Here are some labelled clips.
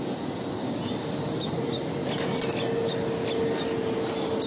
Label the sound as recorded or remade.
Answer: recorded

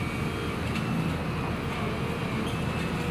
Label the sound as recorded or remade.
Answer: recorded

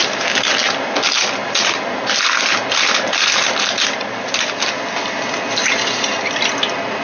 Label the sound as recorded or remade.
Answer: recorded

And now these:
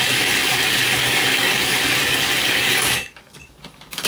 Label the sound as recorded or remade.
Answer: remade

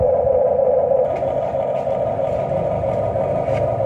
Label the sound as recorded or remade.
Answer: recorded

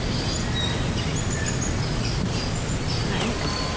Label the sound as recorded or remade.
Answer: recorded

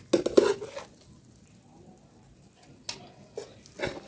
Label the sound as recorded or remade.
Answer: recorded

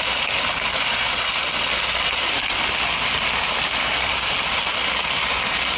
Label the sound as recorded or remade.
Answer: recorded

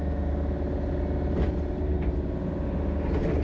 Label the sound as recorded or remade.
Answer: recorded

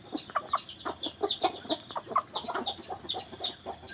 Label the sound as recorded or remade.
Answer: recorded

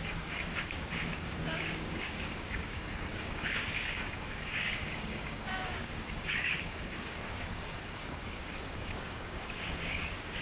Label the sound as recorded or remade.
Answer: remade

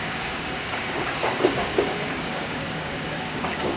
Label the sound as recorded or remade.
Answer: remade